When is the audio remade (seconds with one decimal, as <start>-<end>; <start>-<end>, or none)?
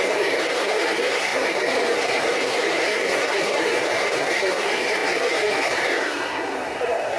0.0-7.2